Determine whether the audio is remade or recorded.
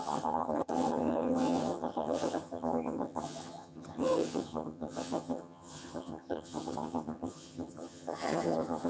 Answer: remade